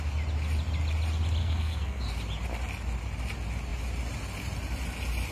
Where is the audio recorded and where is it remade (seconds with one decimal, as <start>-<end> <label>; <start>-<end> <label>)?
0.0-1.4 recorded; 1.4-2.0 remade; 2.0-5.3 recorded